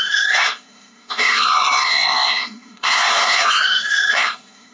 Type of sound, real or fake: fake